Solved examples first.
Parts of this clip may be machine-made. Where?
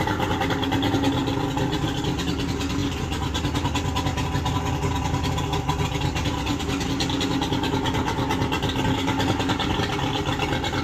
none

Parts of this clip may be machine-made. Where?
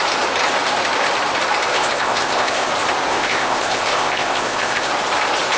1.7-2.7 (codec, ZipCodec); 3.1-4.9